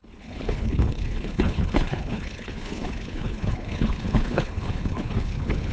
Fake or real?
fake